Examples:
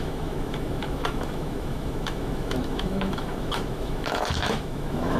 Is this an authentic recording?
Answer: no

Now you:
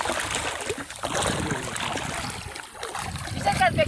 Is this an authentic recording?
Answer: yes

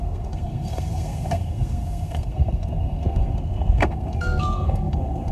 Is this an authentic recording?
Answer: no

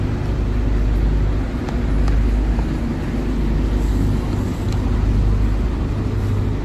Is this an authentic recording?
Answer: yes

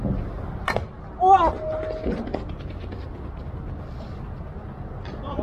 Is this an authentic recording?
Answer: yes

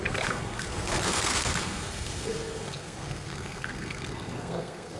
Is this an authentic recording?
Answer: no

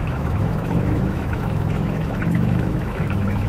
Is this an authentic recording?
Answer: no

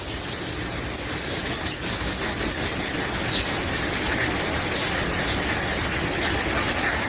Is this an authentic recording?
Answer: yes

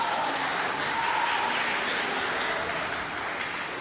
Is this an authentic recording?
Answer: yes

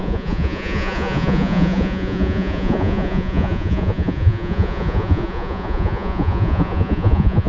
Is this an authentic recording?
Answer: no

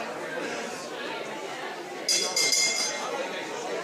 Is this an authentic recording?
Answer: yes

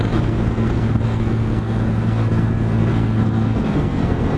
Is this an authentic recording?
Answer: no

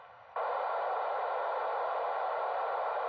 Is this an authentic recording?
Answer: yes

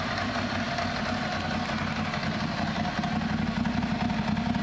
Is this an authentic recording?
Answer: yes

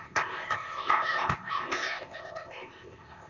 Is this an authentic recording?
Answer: no